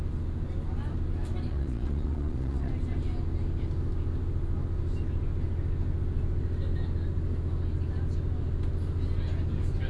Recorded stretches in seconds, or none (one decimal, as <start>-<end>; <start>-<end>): 0.0-1.5; 2.7-9.9